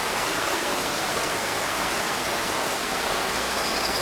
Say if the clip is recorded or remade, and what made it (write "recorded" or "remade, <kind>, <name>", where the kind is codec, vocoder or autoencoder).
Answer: remade, codec, SNAC